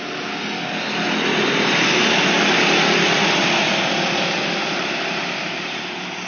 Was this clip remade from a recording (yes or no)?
no